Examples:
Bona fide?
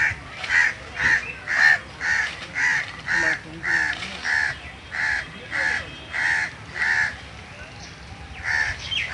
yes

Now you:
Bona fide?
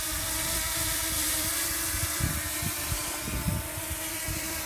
no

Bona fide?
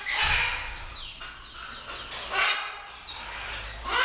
yes